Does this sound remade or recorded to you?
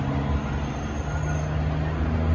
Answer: recorded